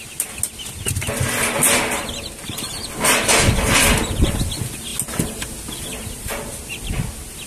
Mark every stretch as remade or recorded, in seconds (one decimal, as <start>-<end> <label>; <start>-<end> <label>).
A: 0.0-7.5 recorded